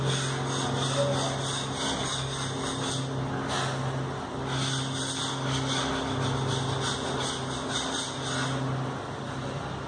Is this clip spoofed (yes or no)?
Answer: no